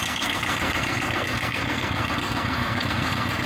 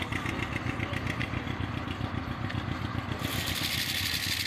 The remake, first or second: first